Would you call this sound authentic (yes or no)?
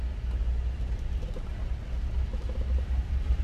yes